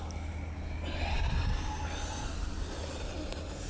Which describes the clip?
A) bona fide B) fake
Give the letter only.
A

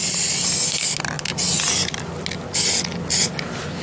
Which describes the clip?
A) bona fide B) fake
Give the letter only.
A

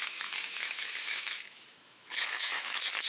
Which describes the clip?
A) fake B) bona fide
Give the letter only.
A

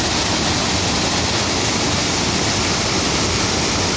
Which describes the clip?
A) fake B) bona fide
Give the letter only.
B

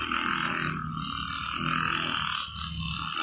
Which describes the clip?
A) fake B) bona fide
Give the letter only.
B